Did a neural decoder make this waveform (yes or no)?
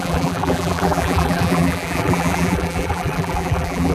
yes